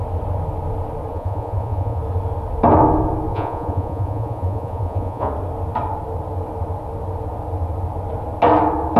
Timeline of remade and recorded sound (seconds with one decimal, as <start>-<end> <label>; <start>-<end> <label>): 0.0-1.1 recorded; 1.1-2.0 remade; 2.0-3.3 recorded; 3.3-5.3 remade; 5.3-9.0 recorded